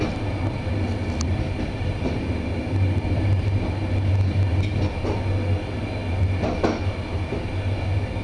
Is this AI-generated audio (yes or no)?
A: no